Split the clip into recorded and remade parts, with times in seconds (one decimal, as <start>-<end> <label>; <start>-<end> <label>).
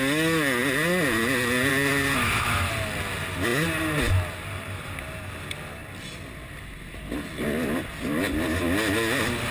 0.0-2.2 recorded; 2.2-2.7 remade; 2.7-9.5 recorded